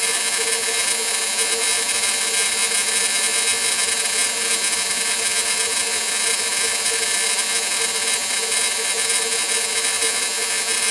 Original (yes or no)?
no